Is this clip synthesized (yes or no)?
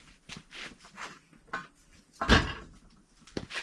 no